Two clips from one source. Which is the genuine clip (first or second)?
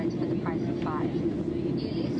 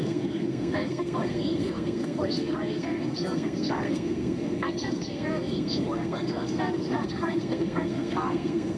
first